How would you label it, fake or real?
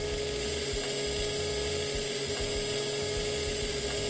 real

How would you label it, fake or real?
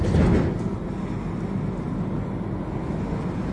real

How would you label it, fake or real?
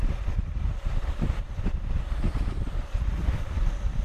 real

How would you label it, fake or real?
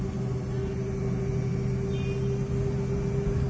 real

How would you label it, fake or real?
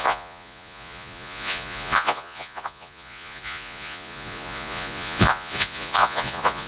fake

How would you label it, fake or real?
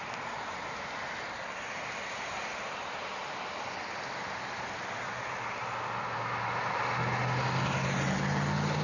real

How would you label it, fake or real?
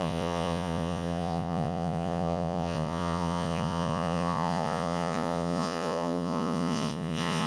fake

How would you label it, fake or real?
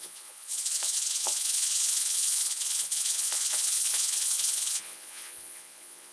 fake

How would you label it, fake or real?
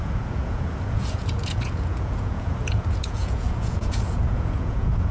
fake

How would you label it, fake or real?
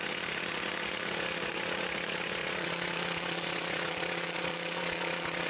fake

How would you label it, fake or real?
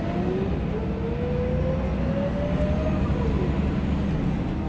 real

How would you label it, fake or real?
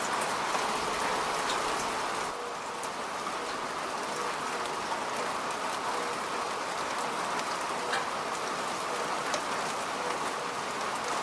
real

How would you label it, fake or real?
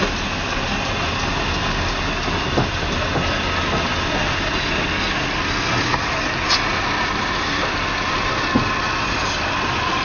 real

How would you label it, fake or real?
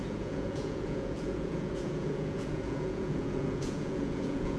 fake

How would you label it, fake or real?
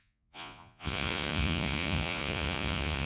fake